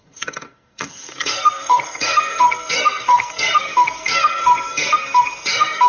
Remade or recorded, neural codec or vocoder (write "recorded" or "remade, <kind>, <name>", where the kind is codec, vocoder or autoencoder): remade, codec, SNAC